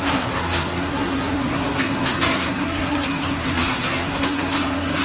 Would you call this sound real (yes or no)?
no